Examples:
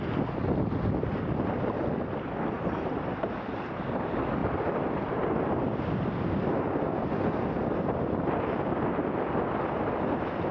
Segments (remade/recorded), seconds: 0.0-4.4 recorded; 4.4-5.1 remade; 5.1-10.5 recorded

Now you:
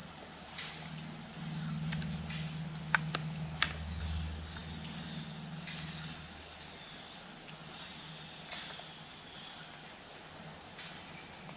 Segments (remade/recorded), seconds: 0.0-1.9 remade; 1.9-11.6 recorded